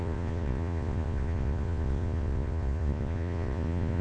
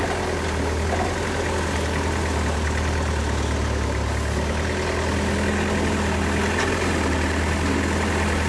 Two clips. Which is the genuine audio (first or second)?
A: second